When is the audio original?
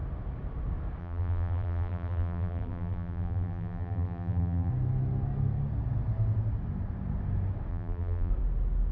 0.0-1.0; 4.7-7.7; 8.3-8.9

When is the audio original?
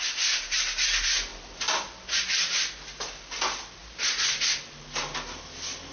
0.0-3.8; 4.5-5.9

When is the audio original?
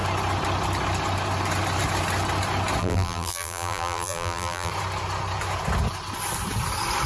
0.0-2.8; 4.7-7.1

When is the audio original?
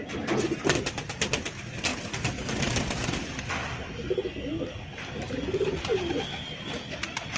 0.0-7.4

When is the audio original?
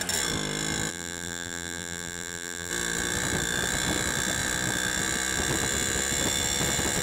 0.0-0.9; 2.7-7.0